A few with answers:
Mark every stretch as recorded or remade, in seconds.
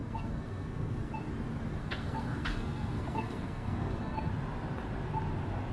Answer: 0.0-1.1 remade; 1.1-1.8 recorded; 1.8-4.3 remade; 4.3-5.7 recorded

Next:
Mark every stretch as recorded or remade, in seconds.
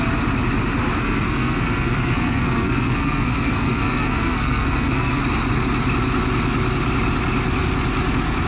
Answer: 0.0-0.9 recorded; 0.9-5.2 remade; 5.2-8.5 recorded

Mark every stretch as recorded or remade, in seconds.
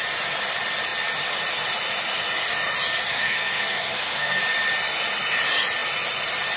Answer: 0.0-3.1 recorded; 3.1-4.4 remade; 4.4-6.6 recorded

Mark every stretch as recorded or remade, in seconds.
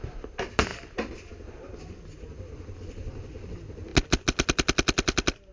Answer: 0.0-5.5 recorded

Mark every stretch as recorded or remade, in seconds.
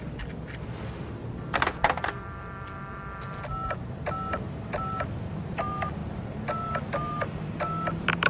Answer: 0.0-8.3 recorded